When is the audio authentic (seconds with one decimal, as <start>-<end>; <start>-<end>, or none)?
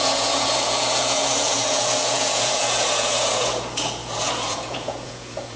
none